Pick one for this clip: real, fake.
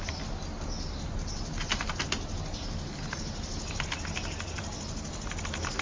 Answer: real